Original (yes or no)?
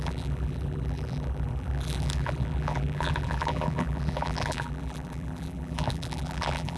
no